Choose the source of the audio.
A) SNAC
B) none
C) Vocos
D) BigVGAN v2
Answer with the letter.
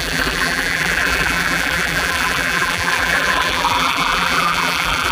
D